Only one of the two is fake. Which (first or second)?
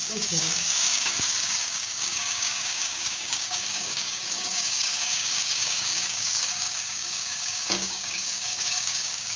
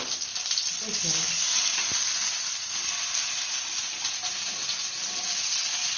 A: first